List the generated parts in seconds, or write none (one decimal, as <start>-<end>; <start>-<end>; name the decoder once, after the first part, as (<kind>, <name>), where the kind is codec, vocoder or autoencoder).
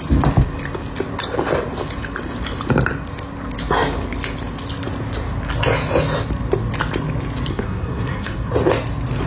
7.5-8.5 (codec, SNAC)